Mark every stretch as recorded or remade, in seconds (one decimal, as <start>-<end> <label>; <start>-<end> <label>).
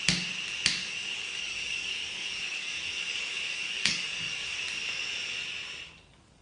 0.0-0.8 recorded; 0.8-4.6 remade; 4.6-6.4 recorded